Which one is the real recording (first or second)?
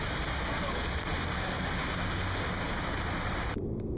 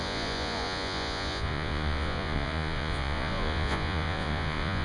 first